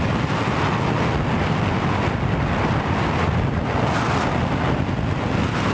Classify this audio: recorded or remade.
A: recorded